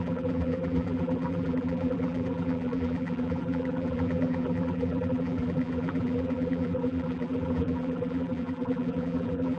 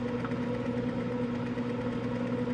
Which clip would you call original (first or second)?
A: second